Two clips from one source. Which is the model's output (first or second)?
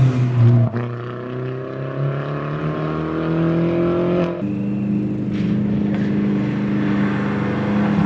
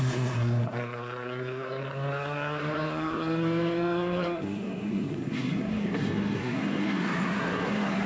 second